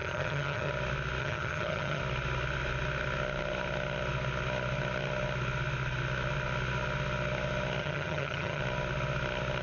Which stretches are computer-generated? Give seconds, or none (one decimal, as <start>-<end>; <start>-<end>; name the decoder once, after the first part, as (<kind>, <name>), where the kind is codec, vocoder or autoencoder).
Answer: 0.0-0.7 (vocoder, HiFi-GAN); 1.2-2.0; 7.8-8.6

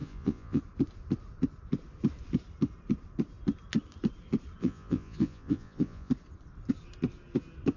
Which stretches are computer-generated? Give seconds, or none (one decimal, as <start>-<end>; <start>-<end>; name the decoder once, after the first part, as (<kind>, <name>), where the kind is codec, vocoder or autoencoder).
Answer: 0.0-0.6 (vocoder, Vocos); 4.6-6.1

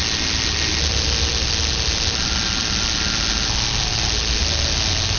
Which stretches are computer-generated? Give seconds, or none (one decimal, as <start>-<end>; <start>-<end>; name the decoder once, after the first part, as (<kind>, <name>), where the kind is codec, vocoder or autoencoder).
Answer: none